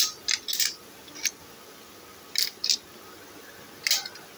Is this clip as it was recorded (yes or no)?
yes